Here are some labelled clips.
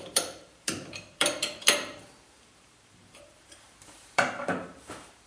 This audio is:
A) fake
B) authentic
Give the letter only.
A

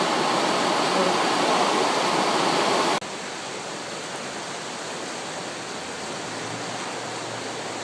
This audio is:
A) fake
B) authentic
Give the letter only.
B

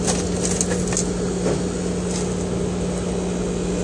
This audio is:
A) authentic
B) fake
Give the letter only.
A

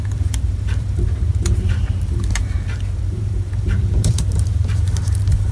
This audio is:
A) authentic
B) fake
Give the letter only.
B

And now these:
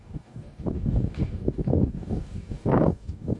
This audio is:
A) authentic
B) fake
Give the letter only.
B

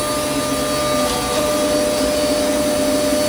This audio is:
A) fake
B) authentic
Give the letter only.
B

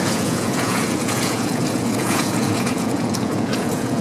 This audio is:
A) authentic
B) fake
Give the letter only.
B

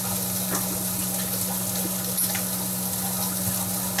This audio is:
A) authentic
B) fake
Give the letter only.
A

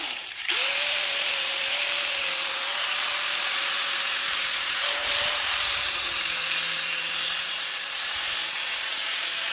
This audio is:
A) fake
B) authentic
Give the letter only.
A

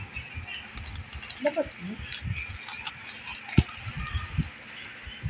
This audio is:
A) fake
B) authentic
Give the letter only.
B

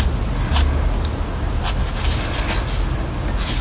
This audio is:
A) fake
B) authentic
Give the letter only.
B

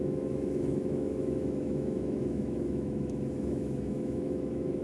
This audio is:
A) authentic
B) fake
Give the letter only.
B